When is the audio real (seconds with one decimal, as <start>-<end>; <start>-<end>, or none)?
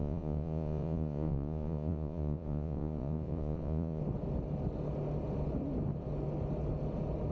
4.0-7.3